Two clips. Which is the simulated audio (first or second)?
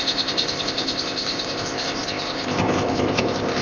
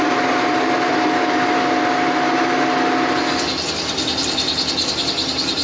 first